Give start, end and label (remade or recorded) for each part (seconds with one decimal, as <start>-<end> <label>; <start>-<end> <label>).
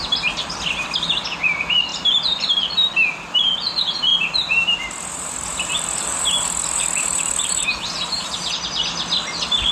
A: 0.0-1.9 recorded; 1.9-2.6 remade; 2.6-4.1 recorded; 4.1-8.5 remade; 8.5-9.7 recorded